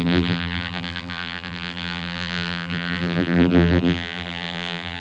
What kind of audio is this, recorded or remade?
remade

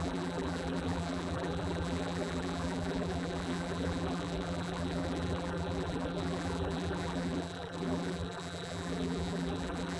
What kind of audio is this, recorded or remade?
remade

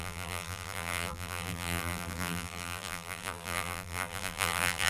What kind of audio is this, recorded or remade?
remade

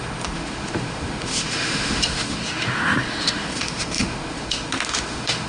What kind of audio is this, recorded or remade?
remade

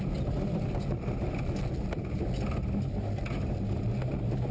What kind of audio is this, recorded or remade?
recorded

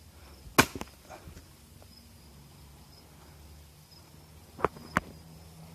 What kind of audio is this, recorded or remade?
recorded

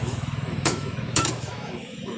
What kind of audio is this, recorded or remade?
remade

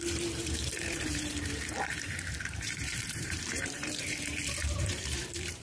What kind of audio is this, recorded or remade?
remade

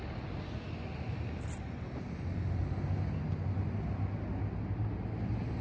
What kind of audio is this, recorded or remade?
recorded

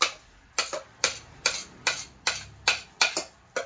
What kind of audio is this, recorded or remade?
recorded